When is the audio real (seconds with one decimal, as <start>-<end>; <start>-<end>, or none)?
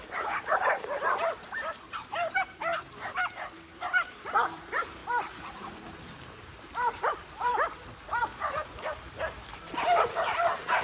2.7-3.8; 7.5-8.2